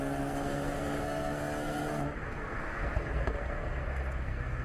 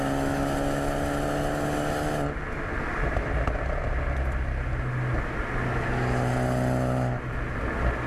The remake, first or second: first